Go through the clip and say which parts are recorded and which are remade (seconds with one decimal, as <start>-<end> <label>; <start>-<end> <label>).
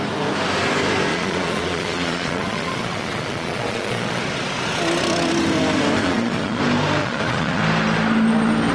0.0-1.1 recorded; 1.1-4.2 remade; 4.2-6.0 recorded; 6.0-6.6 remade; 6.6-7.0 recorded; 7.0-7.6 remade; 7.6-8.7 recorded